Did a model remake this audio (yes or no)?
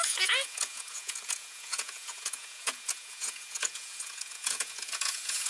yes